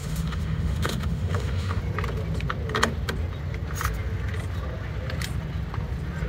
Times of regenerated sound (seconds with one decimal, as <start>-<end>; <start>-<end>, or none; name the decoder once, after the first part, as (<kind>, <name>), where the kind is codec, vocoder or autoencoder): 0.0-1.8 (autoencoder, DAC-VAE)